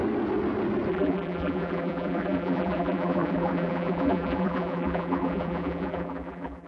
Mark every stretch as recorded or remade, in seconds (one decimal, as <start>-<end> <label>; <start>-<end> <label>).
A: 0.0-0.9 recorded; 0.9-6.7 remade